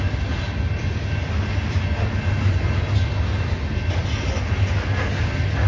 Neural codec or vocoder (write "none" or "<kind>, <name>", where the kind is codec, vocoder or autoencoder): none